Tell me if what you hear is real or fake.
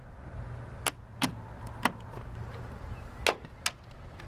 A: real